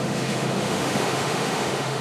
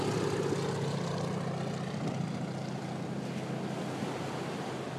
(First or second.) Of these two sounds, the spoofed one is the first